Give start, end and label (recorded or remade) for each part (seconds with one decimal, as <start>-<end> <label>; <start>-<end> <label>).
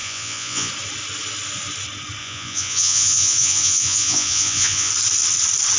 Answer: 0.0-0.7 remade; 0.7-2.2 recorded; 2.2-4.9 remade; 4.9-5.8 recorded